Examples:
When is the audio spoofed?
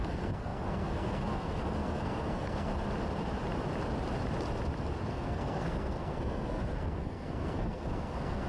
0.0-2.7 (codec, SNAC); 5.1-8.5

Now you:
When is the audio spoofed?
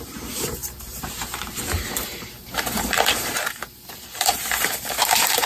0.0-5.5 (vocoder, BigVGAN v2)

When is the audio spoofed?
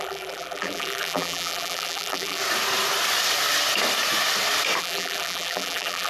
0.0-2.4 (vocoder, BigVGAN v2); 4.8-6.1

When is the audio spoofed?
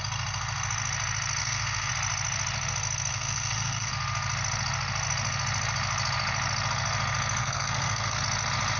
1.4-1.9 (codec, SNAC); 3.1-3.9; 7.4-8.2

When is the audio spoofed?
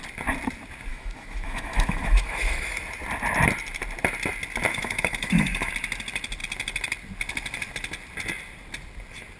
0.9-2.8 (autoencoder, DAC-VAE); 4.7-5.7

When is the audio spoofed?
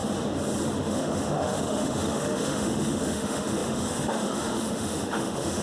0.8-5.6 (autoencoder, DAC-VAE)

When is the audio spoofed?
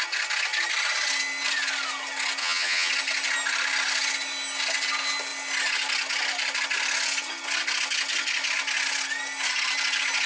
2.4-2.9 (vocoder, HiFi-GAN)